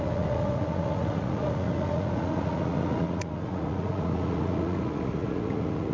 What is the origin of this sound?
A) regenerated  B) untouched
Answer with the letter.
A